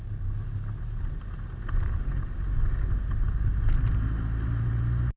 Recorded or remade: recorded